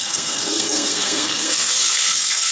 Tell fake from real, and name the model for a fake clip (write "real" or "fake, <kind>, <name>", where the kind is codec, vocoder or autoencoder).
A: fake, codec, SNAC